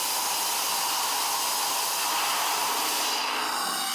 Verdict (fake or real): real